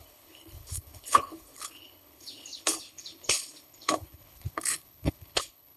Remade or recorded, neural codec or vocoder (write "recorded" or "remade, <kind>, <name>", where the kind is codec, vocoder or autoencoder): remade, codec, HILCodec